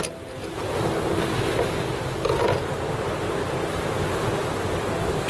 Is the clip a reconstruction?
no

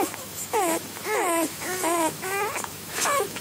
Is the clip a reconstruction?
yes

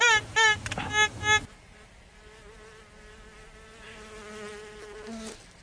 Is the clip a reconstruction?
no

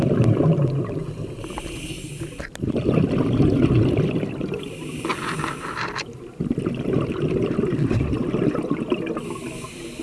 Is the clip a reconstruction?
no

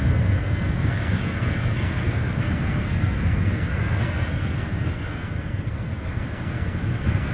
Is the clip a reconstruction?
yes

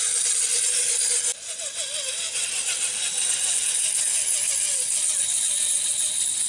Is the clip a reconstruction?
no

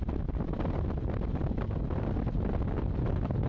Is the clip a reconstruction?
no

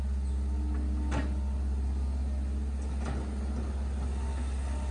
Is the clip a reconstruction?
no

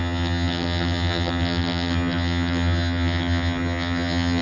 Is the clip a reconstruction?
yes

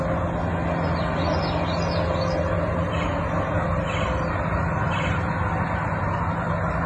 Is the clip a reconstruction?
no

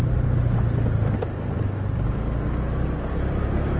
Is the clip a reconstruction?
no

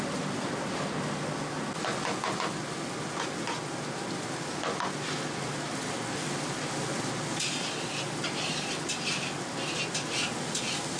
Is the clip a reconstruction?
no